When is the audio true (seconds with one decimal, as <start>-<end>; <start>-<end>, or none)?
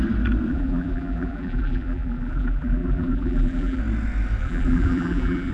0.0-0.5; 3.8-4.4